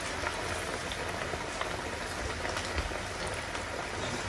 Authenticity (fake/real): real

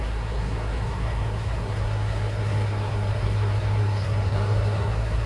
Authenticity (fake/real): fake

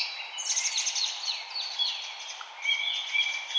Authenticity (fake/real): real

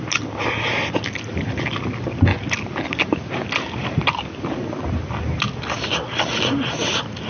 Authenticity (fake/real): real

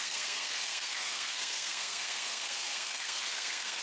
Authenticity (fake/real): fake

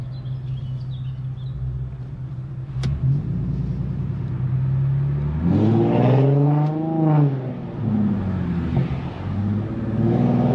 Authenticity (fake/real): real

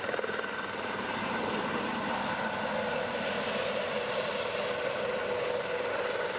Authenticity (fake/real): real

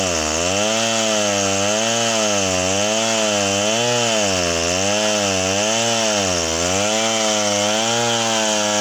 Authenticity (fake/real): real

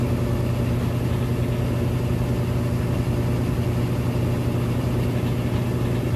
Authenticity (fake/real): real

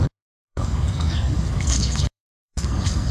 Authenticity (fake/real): fake